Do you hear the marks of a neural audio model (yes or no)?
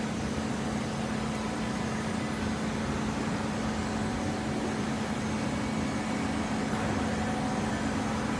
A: no